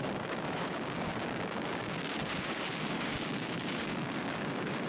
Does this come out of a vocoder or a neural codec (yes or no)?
yes